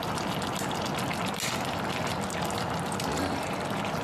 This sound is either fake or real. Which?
real